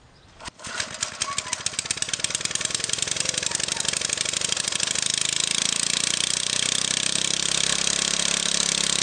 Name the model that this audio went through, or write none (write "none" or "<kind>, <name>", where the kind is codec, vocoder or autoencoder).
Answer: none